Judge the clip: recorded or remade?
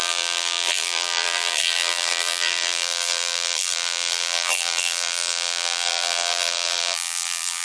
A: remade